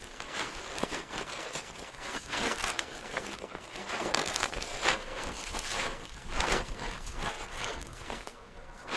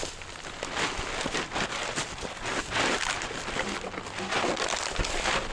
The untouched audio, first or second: second